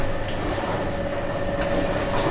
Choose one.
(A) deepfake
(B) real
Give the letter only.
B